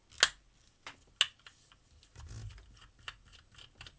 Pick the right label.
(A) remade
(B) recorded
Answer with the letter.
B